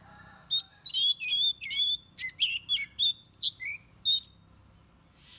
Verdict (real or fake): real